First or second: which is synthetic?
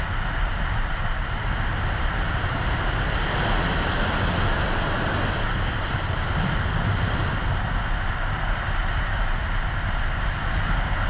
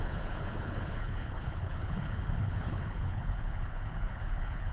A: second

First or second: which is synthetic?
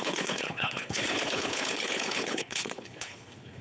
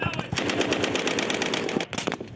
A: first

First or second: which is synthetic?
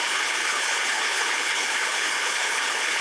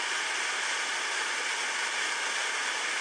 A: first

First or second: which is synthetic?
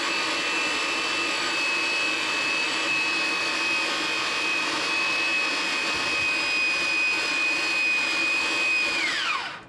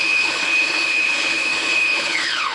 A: second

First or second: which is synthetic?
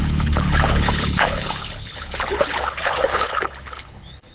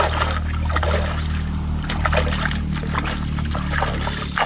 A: first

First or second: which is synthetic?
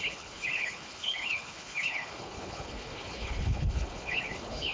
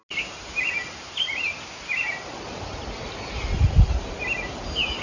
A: first